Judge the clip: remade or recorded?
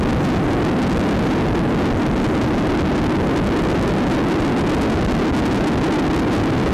recorded